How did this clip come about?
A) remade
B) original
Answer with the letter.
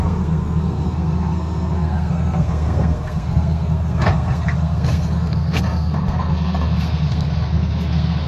A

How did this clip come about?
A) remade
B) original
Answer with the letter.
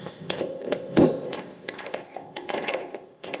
A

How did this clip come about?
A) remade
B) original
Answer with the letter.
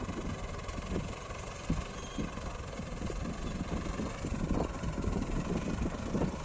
A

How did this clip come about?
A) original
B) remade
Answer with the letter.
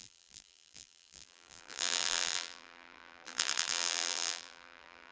B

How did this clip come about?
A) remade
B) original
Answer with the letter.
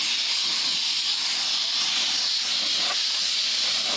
B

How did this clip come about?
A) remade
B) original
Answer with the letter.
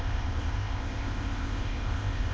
A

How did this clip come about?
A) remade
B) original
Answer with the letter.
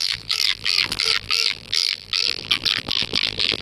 A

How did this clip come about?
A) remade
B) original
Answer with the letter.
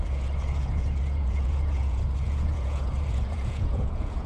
A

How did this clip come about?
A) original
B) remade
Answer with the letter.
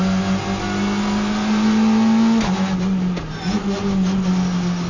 A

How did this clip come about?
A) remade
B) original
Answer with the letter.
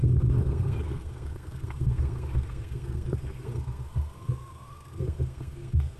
A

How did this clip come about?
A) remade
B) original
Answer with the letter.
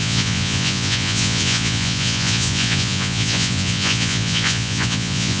A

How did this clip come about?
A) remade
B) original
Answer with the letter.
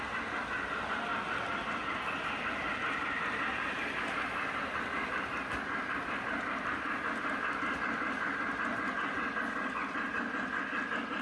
B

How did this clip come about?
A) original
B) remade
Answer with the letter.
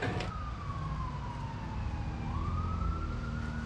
A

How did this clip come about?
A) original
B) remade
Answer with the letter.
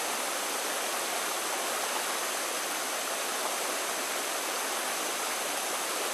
A